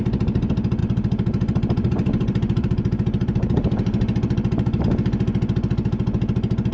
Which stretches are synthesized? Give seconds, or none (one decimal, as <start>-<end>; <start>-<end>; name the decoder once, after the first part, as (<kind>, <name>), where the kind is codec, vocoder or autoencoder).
0.8-4.8 (vocoder, BigVGAN v2)